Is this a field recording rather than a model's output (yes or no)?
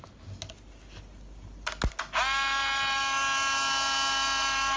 yes